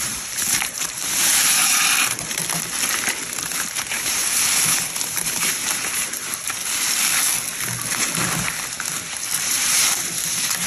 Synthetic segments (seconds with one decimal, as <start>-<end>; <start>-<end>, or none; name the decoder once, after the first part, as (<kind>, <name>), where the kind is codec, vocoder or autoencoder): 0.0-2.4 (vocoder, BigVGAN v2); 3.9-6.2; 9.4-10.7